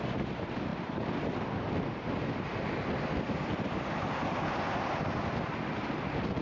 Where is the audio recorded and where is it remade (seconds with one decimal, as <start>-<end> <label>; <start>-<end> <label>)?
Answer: 0.0-6.4 recorded